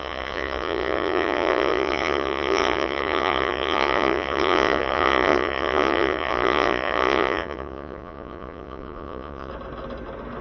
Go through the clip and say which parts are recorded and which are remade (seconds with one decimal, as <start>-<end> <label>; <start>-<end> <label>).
0.0-9.5 remade; 9.5-10.4 recorded